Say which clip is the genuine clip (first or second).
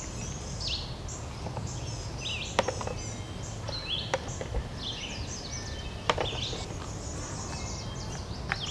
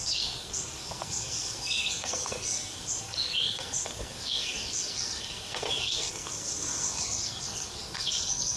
first